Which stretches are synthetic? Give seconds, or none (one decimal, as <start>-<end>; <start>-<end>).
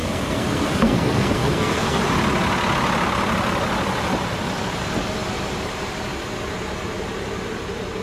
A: 0.0-2.0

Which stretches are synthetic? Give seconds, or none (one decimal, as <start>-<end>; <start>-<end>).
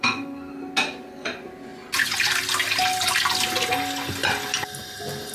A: 0.0-0.5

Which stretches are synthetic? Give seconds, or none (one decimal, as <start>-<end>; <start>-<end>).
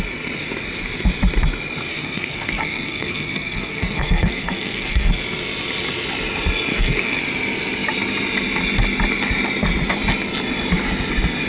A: 1.9-5.1; 6.7-7.2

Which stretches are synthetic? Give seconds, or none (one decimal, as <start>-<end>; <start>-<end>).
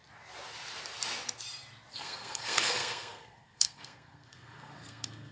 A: 1.9-5.3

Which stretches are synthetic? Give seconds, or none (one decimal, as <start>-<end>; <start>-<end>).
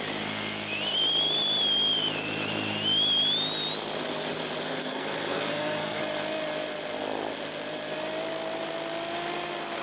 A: 4.8-6.0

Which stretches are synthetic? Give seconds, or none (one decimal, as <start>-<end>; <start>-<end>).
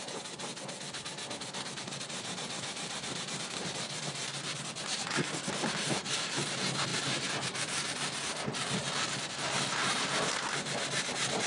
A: none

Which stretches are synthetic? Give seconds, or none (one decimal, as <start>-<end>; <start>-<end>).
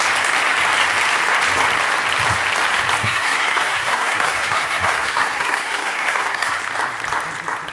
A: 3.0-6.6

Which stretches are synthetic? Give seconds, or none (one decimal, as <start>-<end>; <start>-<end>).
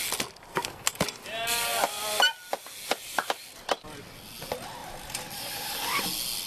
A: 0.5-1.0